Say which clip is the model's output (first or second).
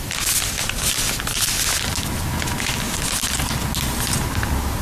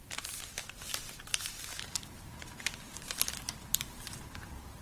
second